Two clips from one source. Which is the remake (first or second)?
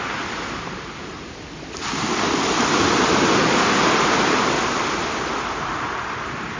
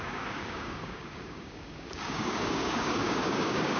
second